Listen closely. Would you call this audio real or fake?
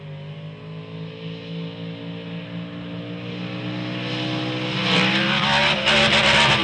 real